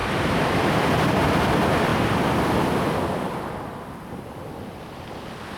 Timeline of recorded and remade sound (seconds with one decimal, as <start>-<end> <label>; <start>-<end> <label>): 0.0-1.9 remade; 1.9-3.5 recorded; 3.5-5.6 remade